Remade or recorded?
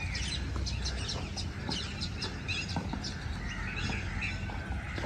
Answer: recorded